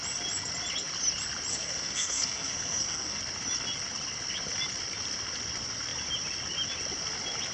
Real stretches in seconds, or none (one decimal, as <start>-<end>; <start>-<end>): 0.0-1.5; 3.2-7.5